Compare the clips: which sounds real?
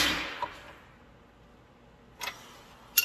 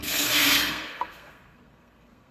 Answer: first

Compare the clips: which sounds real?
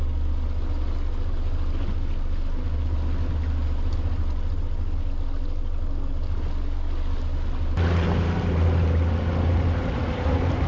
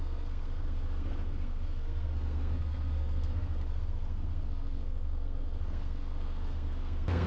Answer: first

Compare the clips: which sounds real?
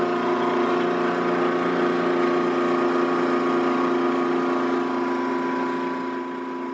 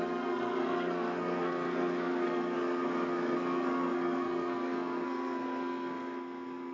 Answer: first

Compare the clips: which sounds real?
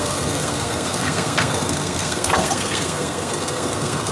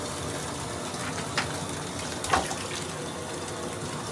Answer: second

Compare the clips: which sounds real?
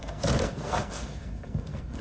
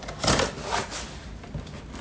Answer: second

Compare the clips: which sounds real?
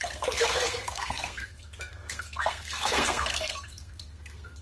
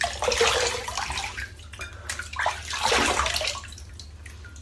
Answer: second